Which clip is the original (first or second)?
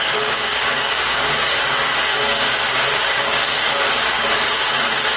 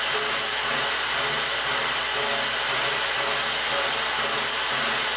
second